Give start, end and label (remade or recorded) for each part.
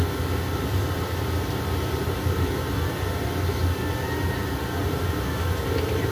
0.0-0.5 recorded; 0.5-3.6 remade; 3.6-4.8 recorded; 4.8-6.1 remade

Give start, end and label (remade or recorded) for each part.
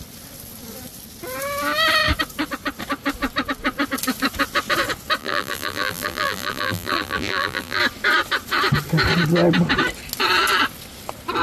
0.0-5.2 recorded; 5.2-7.8 remade; 7.8-11.4 recorded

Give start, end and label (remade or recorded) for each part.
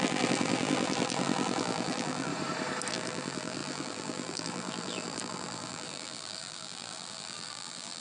0.0-2.3 remade; 2.3-2.9 recorded; 2.9-8.0 remade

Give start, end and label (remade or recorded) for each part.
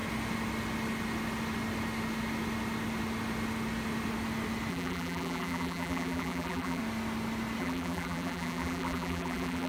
0.0-4.7 recorded; 4.7-6.8 remade; 6.8-7.6 recorded; 7.6-9.7 remade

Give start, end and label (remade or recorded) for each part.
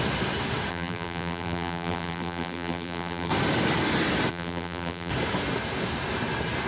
0.0-0.7 recorded; 0.7-3.3 remade; 3.3-4.3 recorded; 4.3-5.1 remade; 5.1-6.7 recorded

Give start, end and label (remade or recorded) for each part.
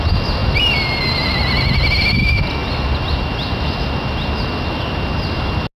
0.0-5.8 recorded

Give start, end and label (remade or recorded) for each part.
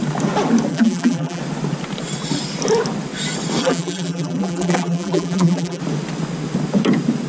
0.0-0.7 recorded; 0.7-1.4 remade; 1.4-3.6 recorded; 3.6-5.8 remade; 5.8-7.3 recorded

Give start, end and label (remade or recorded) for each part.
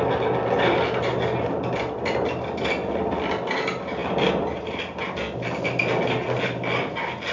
0.0-4.0 recorded; 4.0-4.8 remade; 4.8-7.3 recorded